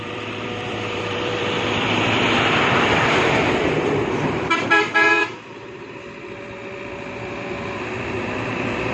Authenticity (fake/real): fake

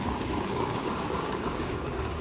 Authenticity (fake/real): fake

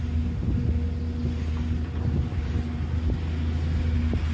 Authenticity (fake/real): real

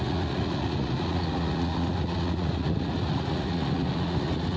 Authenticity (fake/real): fake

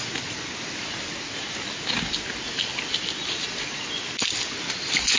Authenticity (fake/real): real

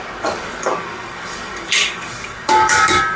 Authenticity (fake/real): fake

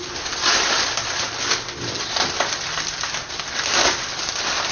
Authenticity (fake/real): real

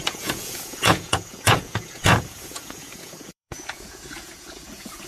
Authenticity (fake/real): fake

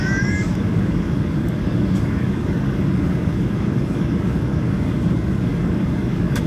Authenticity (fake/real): fake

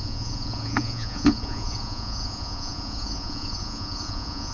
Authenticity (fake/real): fake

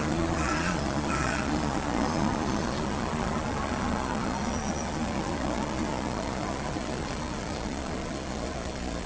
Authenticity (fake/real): fake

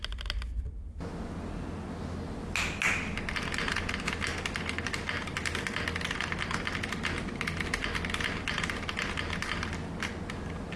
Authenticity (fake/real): real